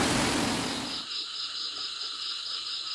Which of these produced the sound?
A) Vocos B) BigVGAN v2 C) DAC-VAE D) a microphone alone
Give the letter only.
D